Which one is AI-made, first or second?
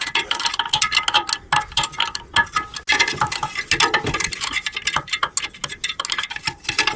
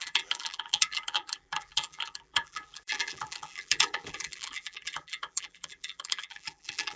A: second